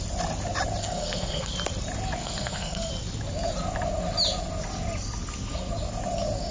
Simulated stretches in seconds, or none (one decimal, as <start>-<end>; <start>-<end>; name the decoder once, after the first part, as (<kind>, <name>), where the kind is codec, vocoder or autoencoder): 0.8-1.5 (codec, SNAC); 2.2-2.9